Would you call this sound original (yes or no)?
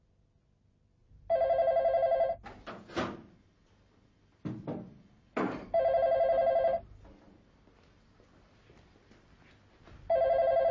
yes